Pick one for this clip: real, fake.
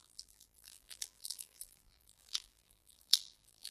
fake